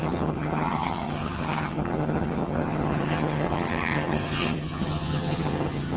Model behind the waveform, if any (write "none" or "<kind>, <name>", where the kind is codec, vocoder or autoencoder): vocoder, HiFi-GAN